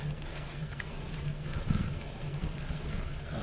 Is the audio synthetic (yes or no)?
yes